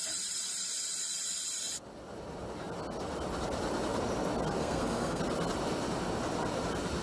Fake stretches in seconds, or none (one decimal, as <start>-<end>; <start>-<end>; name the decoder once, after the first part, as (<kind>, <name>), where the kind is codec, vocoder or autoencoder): 4.6-5.2 (codec, SNAC)